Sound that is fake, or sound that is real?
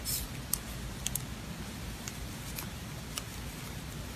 real